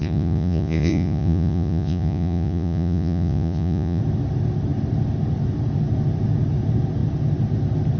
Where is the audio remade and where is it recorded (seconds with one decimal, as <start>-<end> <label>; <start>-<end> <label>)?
0.0-4.0 remade; 4.0-8.0 recorded